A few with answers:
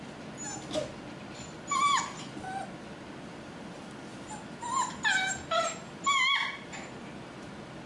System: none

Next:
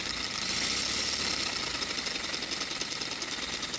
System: none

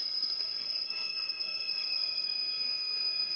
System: codec, SNAC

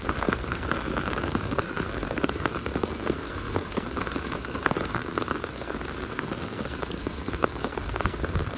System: codec, SNAC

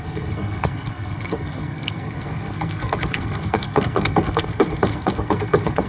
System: codec, SNAC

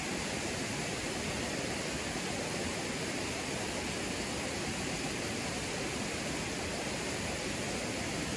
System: none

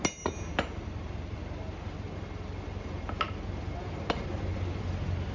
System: none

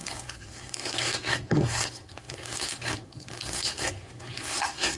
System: codec, SNAC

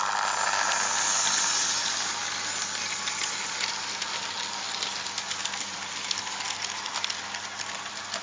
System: none